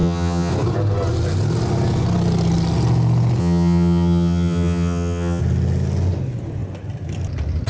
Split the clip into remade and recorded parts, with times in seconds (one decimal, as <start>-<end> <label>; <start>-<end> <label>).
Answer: 0.0-0.5 remade; 0.5-3.4 recorded; 3.4-5.4 remade; 5.4-7.7 recorded